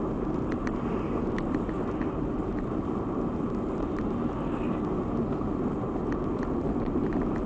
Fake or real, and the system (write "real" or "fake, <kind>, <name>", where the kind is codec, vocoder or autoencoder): real